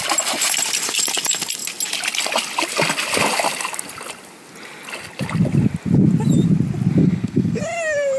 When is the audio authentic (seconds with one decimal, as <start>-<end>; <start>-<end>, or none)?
0.0-7.0; 7.6-8.2